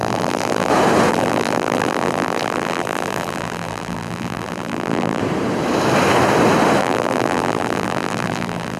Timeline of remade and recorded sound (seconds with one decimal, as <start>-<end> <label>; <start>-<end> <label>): 0.0-0.7 remade; 0.7-1.1 recorded; 1.1-5.2 remade; 5.2-6.8 recorded; 6.8-8.8 remade